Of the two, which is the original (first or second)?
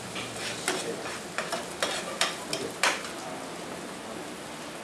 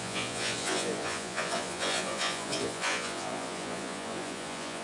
first